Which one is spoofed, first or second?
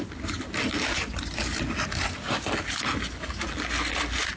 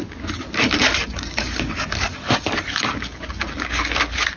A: second